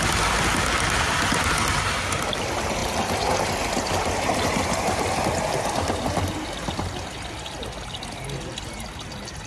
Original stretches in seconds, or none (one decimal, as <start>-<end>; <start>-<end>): 0.0-2.8; 5.2-9.5